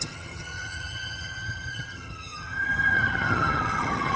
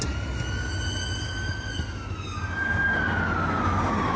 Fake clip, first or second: first